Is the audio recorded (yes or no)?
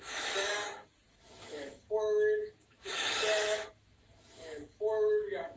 no